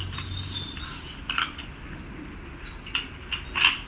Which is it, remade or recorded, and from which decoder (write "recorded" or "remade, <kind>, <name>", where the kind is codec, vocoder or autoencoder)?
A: recorded